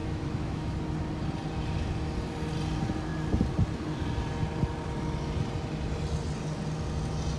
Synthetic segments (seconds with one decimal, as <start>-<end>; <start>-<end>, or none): 0.0-0.8